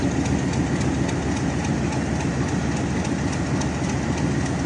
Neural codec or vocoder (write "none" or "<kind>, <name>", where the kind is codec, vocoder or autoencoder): none